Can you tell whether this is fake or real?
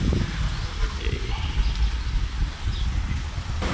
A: real